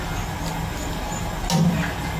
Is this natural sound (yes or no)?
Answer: yes